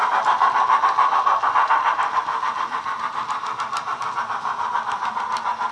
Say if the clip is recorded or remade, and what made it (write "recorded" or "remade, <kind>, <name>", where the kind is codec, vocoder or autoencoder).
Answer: recorded